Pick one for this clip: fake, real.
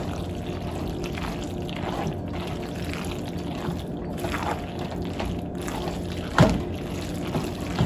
real